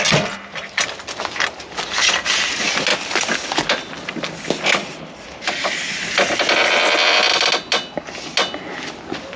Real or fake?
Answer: real